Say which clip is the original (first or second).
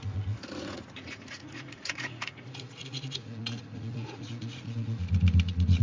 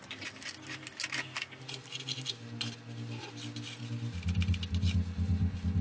second